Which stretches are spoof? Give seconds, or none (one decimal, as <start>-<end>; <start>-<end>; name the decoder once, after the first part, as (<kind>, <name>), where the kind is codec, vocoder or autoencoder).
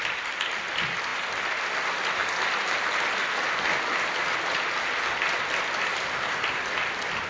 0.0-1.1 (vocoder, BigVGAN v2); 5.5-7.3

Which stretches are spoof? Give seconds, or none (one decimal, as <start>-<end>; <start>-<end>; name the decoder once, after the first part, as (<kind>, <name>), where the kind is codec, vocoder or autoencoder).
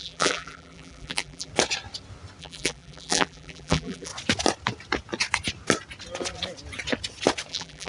0.0-1.5 (vocoder, BigVGAN v2); 2.4-4.1; 7.5-7.9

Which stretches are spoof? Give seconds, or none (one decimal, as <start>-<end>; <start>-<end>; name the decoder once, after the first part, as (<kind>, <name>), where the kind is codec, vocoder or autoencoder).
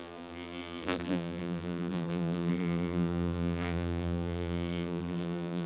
0.0-5.7 (vocoder, BigVGAN v2)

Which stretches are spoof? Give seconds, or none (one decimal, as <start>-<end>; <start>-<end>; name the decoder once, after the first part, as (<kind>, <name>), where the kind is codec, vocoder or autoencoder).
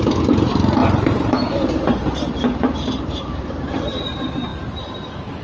0.0-5.4 (vocoder, BigVGAN v2)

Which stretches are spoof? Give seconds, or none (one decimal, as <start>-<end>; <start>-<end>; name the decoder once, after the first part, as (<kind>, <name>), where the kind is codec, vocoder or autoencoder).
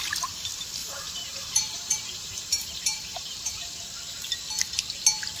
0.8-3.7 (vocoder, BigVGAN v2)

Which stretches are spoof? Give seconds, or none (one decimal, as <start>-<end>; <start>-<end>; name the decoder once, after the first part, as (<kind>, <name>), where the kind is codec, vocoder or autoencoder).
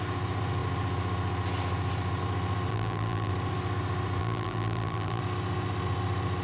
2.7-3.3 (vocoder, BigVGAN v2); 4.2-5.2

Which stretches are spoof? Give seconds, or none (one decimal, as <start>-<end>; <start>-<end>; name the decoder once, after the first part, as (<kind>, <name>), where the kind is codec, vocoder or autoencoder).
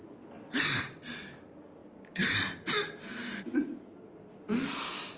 none